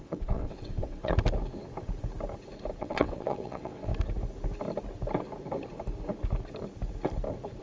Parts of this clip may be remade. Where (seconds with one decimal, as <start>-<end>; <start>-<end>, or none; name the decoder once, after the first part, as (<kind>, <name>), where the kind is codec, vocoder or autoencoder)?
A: 0.0-1.1 (vocoder, WaveNeXt); 2.8-3.9